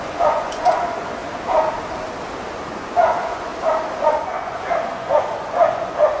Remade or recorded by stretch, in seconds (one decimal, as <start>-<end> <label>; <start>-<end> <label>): 0.0-1.2 remade; 1.2-2.5 recorded; 2.5-3.5 remade; 3.5-4.0 recorded; 4.0-6.2 remade